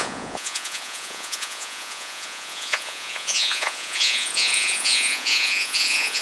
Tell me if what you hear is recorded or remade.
remade